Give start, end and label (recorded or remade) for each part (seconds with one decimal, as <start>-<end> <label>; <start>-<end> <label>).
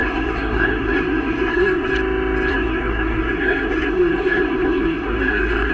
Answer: 0.0-1.9 remade; 1.9-2.5 recorded; 2.5-5.7 remade